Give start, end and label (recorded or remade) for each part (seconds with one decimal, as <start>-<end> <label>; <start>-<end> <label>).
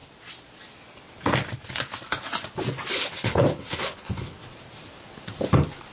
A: 0.0-2.9 recorded; 2.9-4.5 remade; 4.5-5.9 recorded